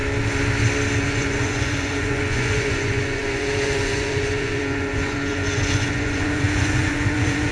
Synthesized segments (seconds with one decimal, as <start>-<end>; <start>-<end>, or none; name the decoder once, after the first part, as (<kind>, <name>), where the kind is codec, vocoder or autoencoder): 1.0-7.5 (vocoder, Vocos)